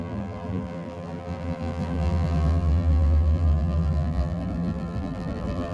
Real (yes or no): no